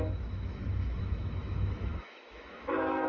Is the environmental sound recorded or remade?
remade